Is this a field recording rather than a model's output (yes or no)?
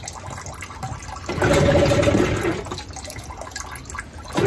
yes